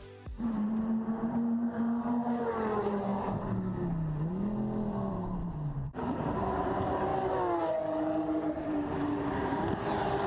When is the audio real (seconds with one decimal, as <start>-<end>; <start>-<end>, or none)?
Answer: 3.1-5.1; 7.1-7.7